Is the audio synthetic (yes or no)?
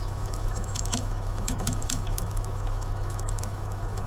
yes